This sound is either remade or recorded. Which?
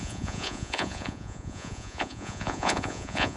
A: remade